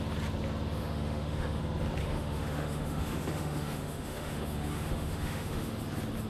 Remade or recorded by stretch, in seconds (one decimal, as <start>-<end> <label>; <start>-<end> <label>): 0.0-0.8 recorded; 0.8-1.6 remade; 1.6-2.0 recorded; 2.0-5.8 remade; 5.8-6.3 recorded